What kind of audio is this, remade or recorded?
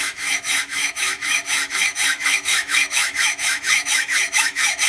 remade